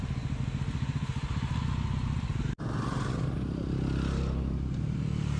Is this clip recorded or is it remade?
recorded